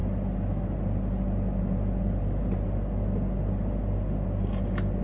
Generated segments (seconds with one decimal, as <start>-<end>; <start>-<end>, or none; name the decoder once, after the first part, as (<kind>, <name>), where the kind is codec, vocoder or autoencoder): none